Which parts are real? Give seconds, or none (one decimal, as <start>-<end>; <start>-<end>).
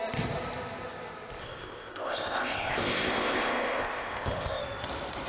0.0-1.4; 4.6-5.3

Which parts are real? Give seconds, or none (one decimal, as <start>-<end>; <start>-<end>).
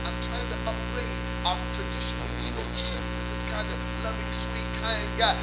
0.0-2.2; 3.0-5.4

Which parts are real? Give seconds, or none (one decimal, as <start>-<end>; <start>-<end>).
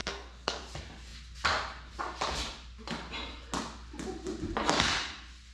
0.6-5.5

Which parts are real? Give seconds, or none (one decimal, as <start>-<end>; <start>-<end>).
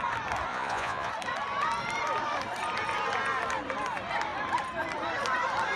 0.0-0.5; 1.1-5.8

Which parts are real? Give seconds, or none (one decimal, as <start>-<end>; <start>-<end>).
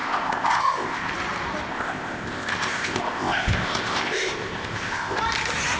1.1-1.7; 5.2-5.8